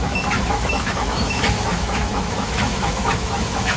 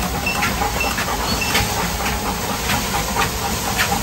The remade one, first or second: first